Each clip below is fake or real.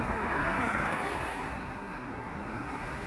fake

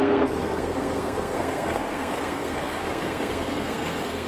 fake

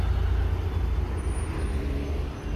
real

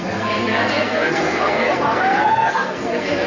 fake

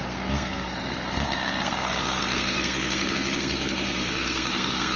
fake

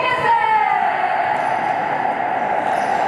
real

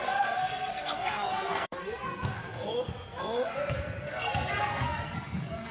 fake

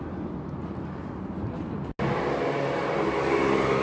real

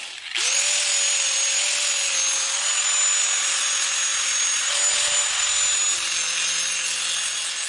real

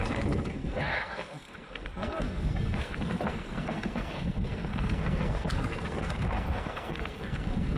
fake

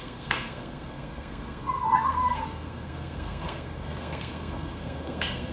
fake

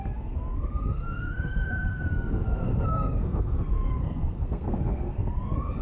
fake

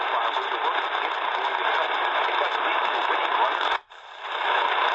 real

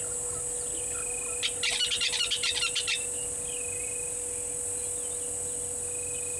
real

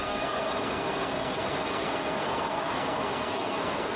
fake